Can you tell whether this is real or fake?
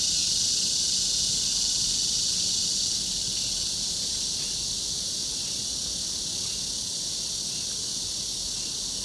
real